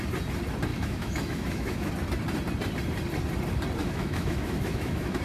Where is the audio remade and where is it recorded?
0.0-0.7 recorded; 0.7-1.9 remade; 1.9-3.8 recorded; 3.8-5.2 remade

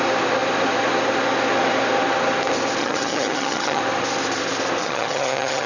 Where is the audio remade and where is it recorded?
0.0-2.8 recorded; 2.8-3.8 remade; 3.8-4.8 recorded; 4.8-5.7 remade

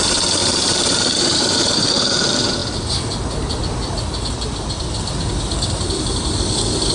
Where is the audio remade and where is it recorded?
0.0-0.4 recorded; 0.4-1.9 remade; 1.9-6.9 recorded

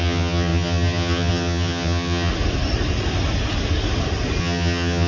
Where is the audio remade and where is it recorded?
0.0-2.3 remade; 2.3-4.4 recorded; 4.4-5.1 remade

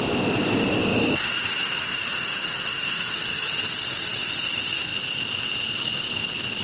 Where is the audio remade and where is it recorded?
0.0-0.9 recorded; 0.9-3.5 remade; 3.5-6.6 recorded

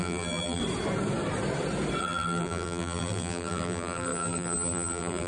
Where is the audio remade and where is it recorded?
0.0-0.6 remade; 0.6-2.0 recorded; 2.0-5.3 remade

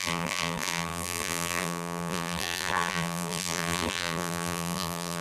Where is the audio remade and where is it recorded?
0.0-5.2 remade